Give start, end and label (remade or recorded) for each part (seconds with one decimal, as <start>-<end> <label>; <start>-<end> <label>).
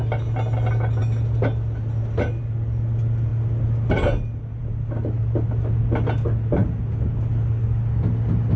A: 0.0-8.6 recorded